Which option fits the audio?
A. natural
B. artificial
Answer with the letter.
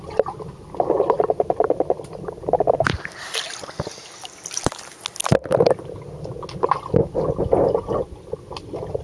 A